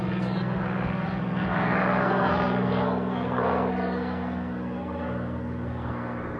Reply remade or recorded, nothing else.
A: remade